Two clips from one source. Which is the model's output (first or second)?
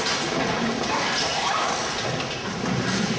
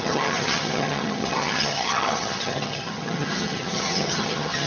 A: second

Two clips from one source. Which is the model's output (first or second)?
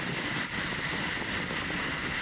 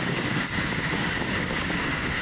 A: second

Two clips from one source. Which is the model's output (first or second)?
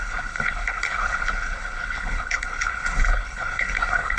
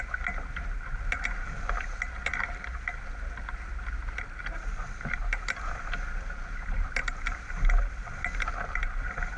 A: first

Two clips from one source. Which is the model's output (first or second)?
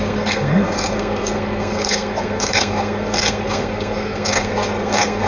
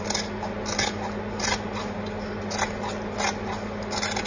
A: first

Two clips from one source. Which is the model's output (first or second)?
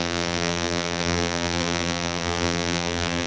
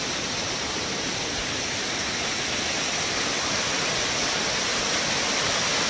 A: first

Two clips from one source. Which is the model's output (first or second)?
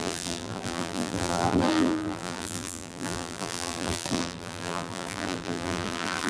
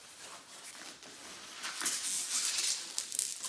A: first